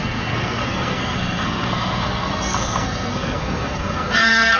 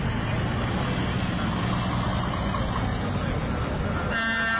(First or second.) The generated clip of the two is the first